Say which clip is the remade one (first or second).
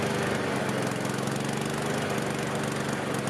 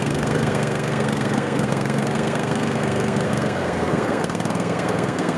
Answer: second